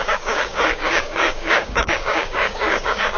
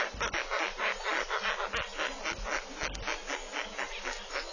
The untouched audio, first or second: second